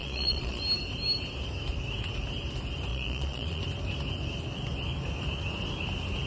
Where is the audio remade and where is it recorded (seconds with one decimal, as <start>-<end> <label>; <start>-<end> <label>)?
0.0-0.6 remade; 0.6-2.9 recorded; 2.9-3.6 remade; 3.6-6.3 recorded